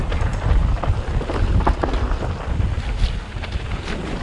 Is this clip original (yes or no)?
yes